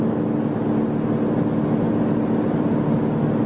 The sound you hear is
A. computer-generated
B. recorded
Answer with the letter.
B